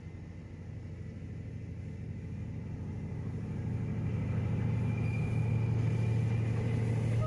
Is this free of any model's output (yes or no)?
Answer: yes